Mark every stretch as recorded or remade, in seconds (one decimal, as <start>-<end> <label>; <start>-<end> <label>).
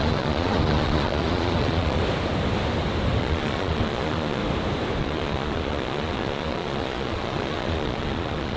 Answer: 0.0-2.0 remade; 2.0-3.2 recorded; 3.2-4.4 remade; 4.4-5.0 recorded; 5.0-8.6 remade